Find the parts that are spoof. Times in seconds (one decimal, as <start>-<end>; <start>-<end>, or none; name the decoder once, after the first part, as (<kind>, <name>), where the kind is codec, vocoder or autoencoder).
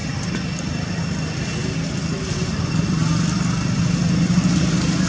none